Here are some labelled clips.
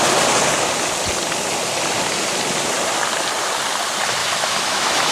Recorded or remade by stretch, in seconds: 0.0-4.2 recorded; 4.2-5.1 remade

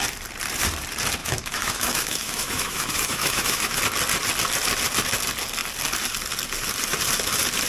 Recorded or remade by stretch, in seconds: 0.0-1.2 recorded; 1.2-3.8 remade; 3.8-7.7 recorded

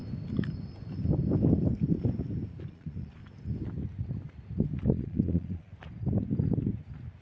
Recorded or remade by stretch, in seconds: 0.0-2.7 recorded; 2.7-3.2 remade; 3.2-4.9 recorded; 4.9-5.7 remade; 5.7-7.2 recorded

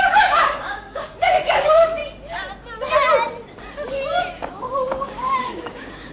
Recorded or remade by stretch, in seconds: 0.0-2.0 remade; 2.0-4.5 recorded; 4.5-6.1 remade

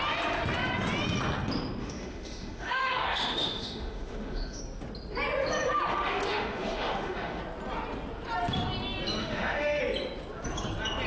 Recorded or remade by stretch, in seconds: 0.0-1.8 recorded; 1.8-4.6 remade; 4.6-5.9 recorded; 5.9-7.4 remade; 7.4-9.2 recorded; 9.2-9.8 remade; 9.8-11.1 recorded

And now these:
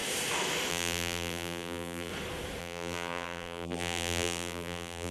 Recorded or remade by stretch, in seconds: 0.0-0.7 recorded; 0.7-2.1 remade; 2.1-2.6 recorded; 2.6-5.1 remade

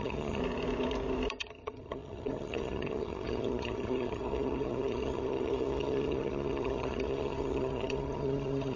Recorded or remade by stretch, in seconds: 0.0-0.4 remade; 0.4-1.4 recorded; 1.4-8.8 remade

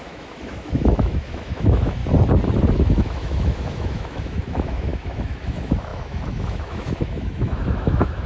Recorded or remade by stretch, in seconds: 0.0-2.0 remade; 2.0-2.8 recorded; 2.8-8.3 remade